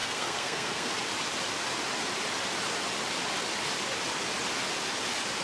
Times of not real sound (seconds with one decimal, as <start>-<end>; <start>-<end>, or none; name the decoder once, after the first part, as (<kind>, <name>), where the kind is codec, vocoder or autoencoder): 0.0-0.9 (codec, SNAC)